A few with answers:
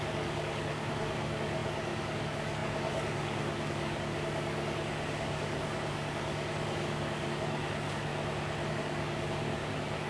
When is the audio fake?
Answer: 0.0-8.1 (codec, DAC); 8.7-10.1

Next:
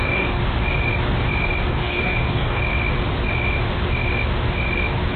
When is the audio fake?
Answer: 0.0-0.4 (codec, DAC); 1.7-2.6

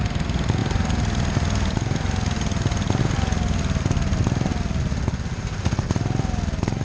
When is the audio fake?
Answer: none

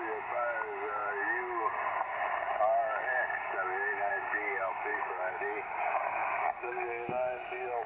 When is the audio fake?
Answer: 4.9-5.4 (codec, DAC)